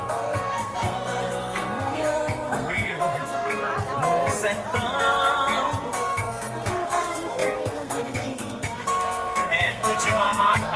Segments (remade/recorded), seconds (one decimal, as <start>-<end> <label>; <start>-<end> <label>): 0.0-3.7 remade; 3.7-5.8 recorded; 5.8-10.8 remade